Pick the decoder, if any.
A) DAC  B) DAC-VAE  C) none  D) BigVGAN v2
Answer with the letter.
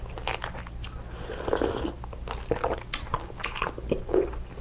C